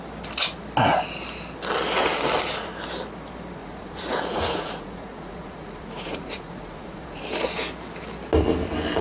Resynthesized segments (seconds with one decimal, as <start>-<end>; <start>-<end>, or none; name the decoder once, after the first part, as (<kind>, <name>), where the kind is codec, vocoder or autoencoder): 3.6-7.2 (vocoder, Vocos)